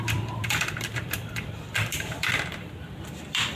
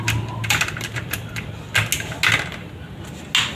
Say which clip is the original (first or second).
second